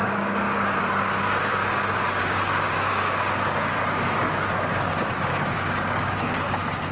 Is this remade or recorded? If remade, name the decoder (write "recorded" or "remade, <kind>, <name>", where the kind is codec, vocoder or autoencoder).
remade, codec, DAC